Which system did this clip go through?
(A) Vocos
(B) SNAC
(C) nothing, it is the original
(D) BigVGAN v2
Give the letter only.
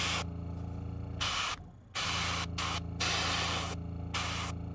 C